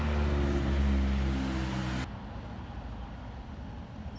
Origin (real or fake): real